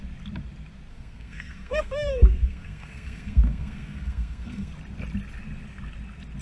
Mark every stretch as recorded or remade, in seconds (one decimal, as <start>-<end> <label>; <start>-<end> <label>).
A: 0.0-0.9 recorded; 0.9-4.7 remade; 4.7-6.4 recorded